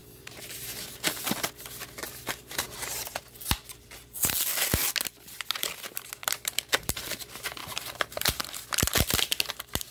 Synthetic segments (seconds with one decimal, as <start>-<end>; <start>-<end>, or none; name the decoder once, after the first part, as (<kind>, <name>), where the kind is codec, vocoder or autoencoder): 0.0-1.2 (vocoder, BigVGAN v2); 2.0-3.1; 6.2-7.1; 7.6-8.5